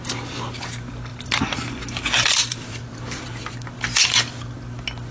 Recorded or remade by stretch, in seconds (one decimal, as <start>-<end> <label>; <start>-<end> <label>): 0.0-1.1 recorded; 1.1-3.5 remade; 3.5-5.1 recorded